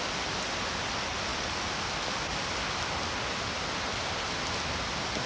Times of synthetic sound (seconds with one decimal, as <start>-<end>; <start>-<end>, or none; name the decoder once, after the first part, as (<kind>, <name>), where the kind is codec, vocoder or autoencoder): none